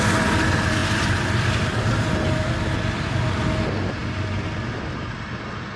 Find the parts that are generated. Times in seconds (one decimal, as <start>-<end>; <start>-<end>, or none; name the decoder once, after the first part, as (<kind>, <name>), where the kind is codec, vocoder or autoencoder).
none